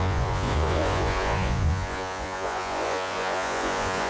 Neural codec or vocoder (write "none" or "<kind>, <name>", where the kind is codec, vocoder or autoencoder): vocoder, Vocos